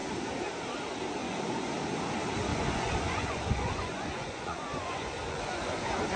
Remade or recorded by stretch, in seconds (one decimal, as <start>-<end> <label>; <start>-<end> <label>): 0.0-1.2 recorded; 1.2-1.7 remade; 1.7-2.5 recorded; 2.5-6.2 remade